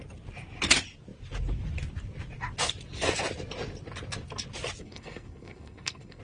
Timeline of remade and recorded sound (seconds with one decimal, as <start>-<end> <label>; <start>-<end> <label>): 0.0-4.8 recorded; 4.8-6.2 remade